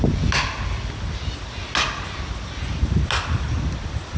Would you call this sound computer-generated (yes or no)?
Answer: no